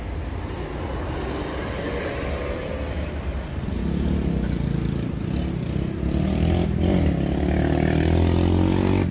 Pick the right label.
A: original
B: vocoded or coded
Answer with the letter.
A